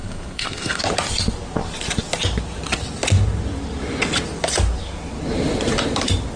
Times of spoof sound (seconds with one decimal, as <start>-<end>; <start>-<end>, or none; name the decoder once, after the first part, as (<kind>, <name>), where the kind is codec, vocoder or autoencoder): 0.0-0.8 (codec, SNAC)